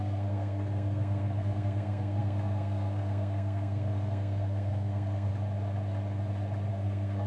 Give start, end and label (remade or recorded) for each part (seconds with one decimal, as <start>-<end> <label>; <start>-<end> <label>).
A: 0.0-5.3 remade; 5.3-6.7 recorded; 6.7-7.3 remade